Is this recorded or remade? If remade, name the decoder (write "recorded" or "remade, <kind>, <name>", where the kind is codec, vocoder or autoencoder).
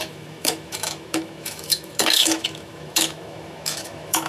remade, autoencoder, DAC-VAE